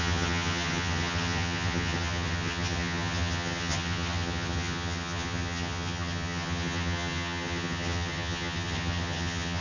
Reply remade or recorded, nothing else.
remade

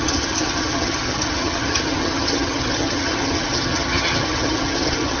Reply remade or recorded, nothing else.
remade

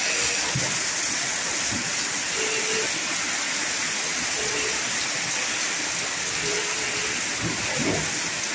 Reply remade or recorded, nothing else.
recorded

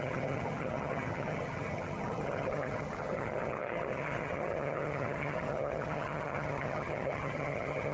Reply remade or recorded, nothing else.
remade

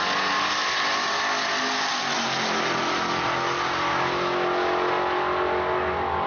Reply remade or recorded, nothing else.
recorded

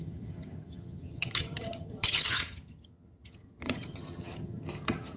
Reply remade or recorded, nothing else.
remade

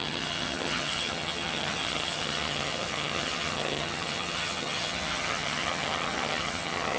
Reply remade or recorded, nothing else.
remade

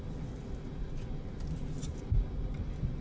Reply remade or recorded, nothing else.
recorded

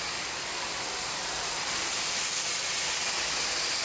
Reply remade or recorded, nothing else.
recorded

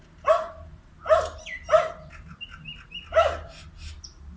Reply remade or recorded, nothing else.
recorded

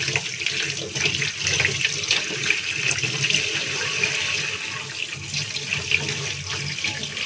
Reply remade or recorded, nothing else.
recorded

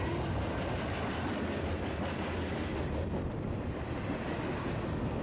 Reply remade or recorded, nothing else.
recorded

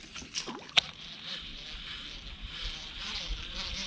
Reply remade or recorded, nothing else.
recorded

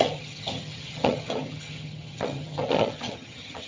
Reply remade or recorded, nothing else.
remade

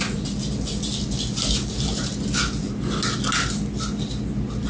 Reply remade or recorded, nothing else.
recorded